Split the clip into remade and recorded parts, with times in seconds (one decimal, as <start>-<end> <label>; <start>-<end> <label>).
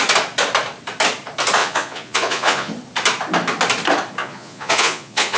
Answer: 0.0-1.6 recorded; 1.6-2.7 remade; 2.7-4.2 recorded; 4.2-5.4 remade